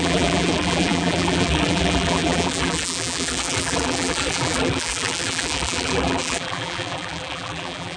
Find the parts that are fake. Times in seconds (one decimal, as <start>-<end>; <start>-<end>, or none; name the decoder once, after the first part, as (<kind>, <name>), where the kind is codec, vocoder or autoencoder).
0.0-8.0 (vocoder, BigVGAN v2)